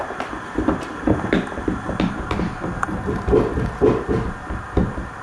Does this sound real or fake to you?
real